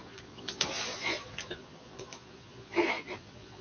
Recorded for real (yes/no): no